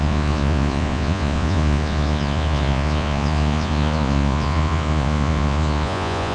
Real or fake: fake